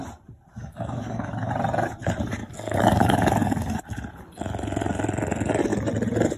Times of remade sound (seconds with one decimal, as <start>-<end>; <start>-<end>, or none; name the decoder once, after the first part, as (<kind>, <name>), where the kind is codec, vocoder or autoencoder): 0.6-1.5 (codec, DAC); 2.4-3.8